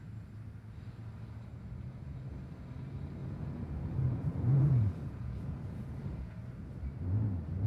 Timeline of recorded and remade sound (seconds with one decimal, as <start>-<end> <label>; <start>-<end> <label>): 0.0-1.5 recorded; 1.5-2.3 remade; 2.3-3.2 recorded; 3.2-6.4 remade; 6.4-7.7 recorded